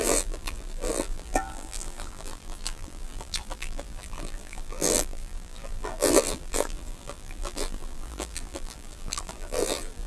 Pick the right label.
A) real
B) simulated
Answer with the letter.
B